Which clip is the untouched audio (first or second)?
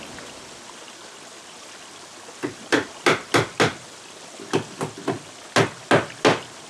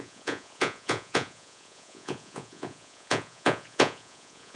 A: first